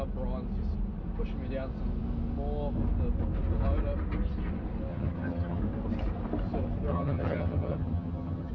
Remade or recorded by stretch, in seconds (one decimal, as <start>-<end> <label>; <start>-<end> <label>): 0.0-4.9 recorded; 4.9-5.6 remade; 5.6-6.9 recorded; 6.9-8.5 remade